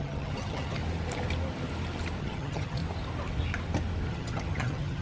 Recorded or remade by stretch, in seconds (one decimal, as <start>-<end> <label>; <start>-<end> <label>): 0.0-0.8 remade; 0.8-2.2 recorded; 2.2-2.8 remade; 2.8-4.1 recorded; 4.1-5.0 remade